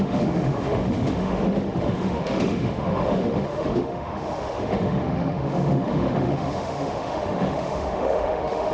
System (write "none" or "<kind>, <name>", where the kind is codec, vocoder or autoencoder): autoencoder, DAC-VAE